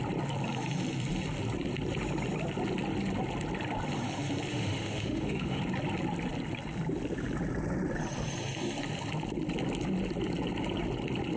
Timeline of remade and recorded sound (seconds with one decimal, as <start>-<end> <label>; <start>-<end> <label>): 0.0-4.5 recorded; 4.5-5.6 remade; 5.6-11.4 recorded